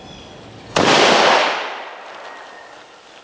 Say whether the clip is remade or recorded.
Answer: recorded